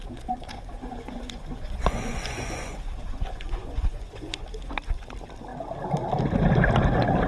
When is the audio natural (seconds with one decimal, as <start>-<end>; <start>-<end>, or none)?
4.4-7.3